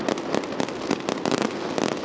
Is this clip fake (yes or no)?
no